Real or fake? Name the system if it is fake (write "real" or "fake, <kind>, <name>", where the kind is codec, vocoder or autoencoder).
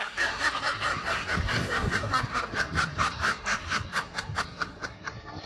fake, codec, SNAC